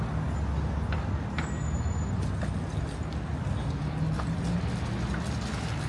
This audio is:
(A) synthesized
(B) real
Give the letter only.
B